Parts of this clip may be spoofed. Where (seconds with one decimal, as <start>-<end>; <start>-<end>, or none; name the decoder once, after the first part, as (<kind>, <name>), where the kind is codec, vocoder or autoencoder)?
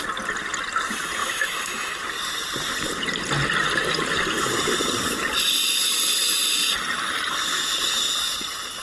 1.2-2.0 (autoencoder, DAC-VAE)